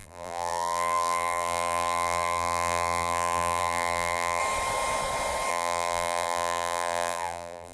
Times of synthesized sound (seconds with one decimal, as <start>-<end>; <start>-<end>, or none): 0.0-4.4; 5.5-7.7